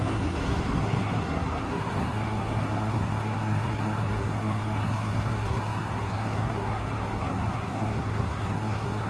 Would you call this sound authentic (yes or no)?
no